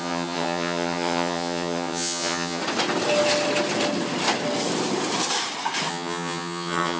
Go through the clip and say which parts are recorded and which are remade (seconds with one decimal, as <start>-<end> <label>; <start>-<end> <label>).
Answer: 0.0-2.6 remade; 2.6-5.9 recorded; 5.9-7.0 remade